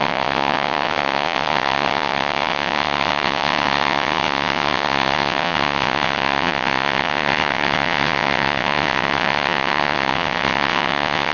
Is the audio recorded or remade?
remade